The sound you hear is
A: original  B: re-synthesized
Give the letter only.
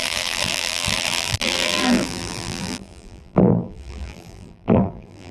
B